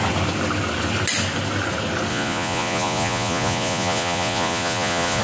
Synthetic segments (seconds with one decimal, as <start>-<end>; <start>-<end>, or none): 2.1-5.2